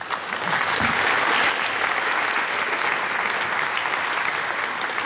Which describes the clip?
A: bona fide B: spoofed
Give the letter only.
A